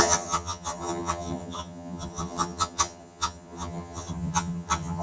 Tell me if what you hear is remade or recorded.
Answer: remade